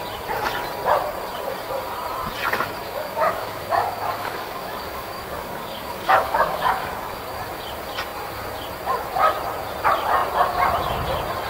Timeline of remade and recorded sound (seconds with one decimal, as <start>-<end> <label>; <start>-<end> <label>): 0.0-2.8 recorded; 2.8-7.3 remade; 7.3-11.5 recorded